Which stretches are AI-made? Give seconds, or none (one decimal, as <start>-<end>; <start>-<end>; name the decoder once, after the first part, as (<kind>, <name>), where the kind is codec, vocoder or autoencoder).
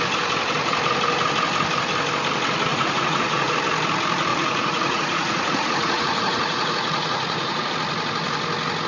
2.7-3.5 (vocoder, Vocos); 4.3-7.7